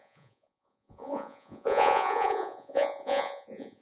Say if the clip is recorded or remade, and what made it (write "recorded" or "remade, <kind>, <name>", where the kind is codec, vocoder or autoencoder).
remade, vocoder, Vocos